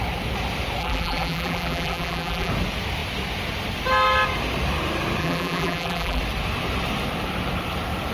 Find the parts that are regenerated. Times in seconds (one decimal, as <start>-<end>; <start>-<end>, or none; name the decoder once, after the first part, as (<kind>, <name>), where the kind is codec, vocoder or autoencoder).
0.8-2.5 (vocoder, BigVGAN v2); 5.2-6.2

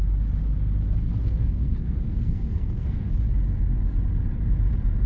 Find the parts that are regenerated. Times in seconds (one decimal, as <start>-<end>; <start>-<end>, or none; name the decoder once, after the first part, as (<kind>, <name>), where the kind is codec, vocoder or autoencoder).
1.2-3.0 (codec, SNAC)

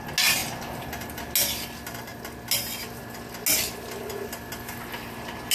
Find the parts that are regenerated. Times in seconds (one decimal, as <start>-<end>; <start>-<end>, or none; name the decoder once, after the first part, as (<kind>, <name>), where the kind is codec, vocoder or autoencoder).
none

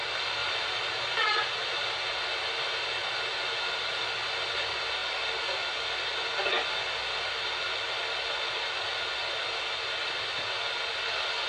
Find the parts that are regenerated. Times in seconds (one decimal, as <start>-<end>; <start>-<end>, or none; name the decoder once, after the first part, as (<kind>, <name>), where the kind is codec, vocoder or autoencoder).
0.4-2.0 (vocoder, BigVGAN v2)

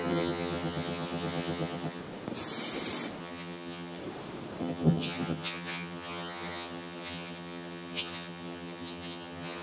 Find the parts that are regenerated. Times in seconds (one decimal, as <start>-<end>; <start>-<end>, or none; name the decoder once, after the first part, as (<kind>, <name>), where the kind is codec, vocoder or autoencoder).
0.0-2.0 (vocoder, HiFi-GAN); 3.2-4.0; 4.6-9.6

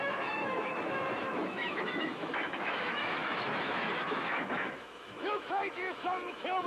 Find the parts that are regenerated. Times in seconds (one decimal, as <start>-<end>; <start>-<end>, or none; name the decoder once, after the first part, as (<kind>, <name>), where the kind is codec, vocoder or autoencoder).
0.0-6.7 (autoencoder, DAC-VAE)

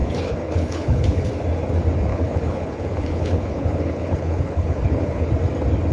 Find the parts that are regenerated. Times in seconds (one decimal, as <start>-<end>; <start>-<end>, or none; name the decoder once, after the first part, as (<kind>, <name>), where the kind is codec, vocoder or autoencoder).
0.0-1.3 (codec, HILCodec); 2.1-5.3

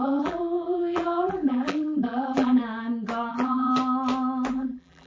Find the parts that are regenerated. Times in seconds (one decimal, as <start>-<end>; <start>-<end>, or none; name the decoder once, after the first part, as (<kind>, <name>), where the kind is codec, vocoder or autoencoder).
0.0-2.6 (vocoder, BigVGAN v2); 3.3-3.7; 4.5-5.1